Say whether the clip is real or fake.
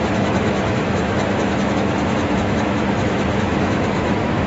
fake